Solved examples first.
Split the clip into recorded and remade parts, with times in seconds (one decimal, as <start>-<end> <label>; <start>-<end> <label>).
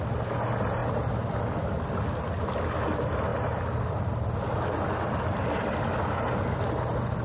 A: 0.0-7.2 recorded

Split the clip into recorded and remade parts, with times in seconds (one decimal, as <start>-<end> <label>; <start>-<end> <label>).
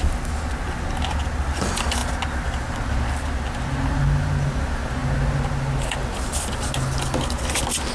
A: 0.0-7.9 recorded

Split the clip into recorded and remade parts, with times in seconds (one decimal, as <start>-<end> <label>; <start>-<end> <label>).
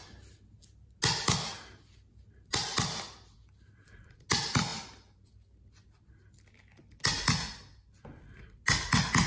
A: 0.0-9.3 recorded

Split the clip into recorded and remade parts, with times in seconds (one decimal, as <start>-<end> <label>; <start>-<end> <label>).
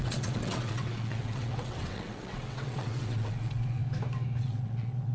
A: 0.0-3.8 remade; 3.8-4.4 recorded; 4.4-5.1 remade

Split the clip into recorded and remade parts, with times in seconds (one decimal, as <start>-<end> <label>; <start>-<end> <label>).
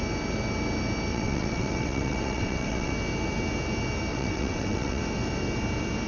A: 0.0-1.1 recorded; 1.1-2.9 remade; 2.9-4.1 recorded; 4.1-5.0 remade; 5.0-6.1 recorded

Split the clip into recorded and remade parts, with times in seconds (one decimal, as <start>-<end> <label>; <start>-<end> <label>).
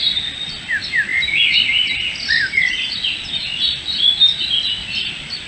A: 0.0-5.5 recorded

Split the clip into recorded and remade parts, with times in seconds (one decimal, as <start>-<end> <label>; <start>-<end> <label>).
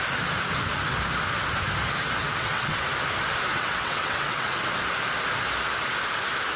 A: 0.0-2.2 recorded; 2.2-2.8 remade; 2.8-3.5 recorded; 3.5-4.5 remade; 4.5-6.6 recorded